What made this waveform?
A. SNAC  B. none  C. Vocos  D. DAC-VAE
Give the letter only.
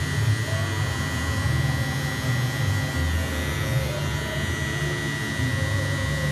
B